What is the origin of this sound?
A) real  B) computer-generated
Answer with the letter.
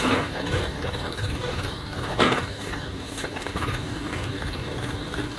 B